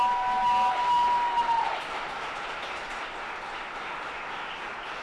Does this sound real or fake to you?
real